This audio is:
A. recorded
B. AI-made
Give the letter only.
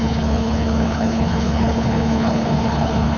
B